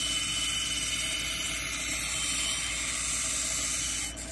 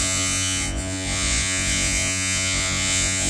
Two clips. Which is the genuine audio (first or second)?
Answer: first